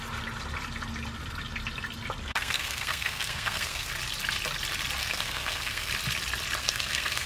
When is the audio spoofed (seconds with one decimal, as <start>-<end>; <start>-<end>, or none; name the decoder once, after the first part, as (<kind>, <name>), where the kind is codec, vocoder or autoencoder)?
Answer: 2.2-3.9 (codec, SNAC); 5.0-5.9; 6.6-7.3